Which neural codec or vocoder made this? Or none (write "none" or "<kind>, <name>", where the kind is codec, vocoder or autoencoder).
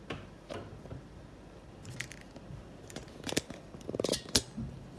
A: vocoder, BigVGAN v2